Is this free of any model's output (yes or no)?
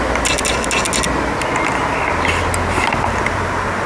yes